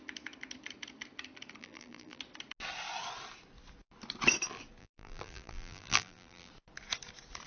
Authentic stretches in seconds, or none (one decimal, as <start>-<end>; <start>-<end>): 0.0-1.6; 2.2-4.8; 6.5-7.5